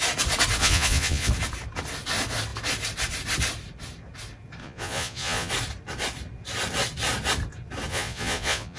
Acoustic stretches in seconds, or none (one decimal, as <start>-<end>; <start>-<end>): 0.0-0.6; 1.3-4.6; 5.5-7.9